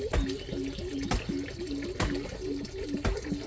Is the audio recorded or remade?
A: recorded